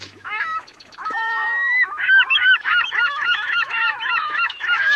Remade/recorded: remade